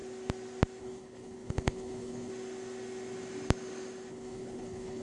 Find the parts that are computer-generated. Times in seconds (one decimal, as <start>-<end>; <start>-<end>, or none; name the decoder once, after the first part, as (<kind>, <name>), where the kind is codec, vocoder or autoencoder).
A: 0.8-2.3 (codec, HILCodec); 4.1-5.0